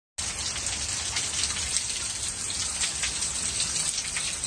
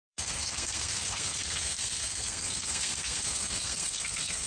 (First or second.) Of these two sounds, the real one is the first